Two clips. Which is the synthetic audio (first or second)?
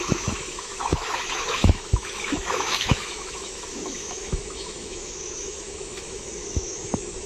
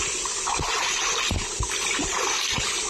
first